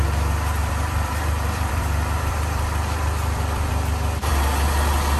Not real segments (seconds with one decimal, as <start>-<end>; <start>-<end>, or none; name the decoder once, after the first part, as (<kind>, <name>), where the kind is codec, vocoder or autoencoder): 0.6-3.7 (vocoder, BigVGAN v2)